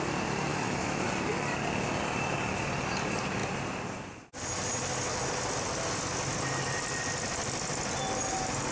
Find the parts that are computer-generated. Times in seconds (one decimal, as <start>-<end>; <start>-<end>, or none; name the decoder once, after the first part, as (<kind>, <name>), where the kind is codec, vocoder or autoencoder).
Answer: 0.5-1.1 (autoencoder, DAC-VAE)